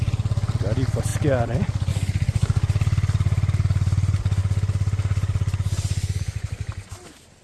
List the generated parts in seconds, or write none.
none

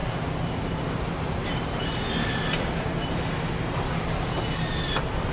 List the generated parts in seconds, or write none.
0.0-3.2 (vocoder, BigVGAN v2)